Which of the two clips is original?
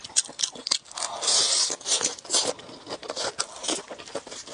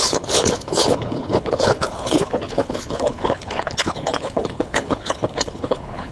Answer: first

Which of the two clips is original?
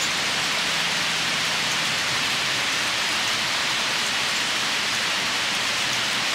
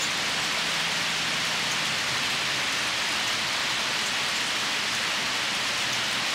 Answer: second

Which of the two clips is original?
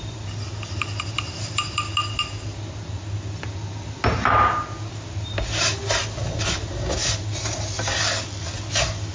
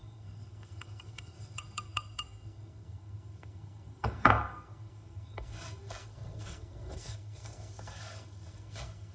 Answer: first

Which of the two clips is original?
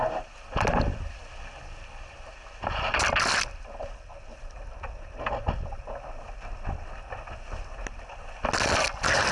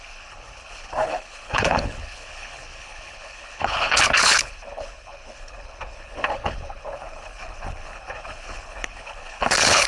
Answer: first